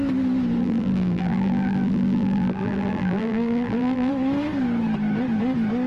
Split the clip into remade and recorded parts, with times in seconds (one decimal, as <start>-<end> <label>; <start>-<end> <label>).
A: 0.0-0.6 recorded; 0.6-4.1 remade; 4.1-5.9 recorded